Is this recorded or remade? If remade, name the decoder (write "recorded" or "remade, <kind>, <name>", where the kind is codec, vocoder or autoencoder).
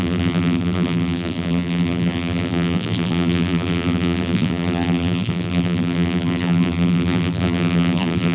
remade, vocoder, BigVGAN v2